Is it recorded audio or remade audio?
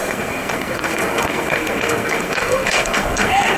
remade